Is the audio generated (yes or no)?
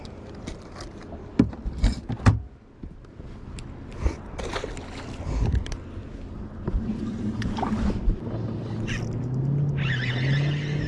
no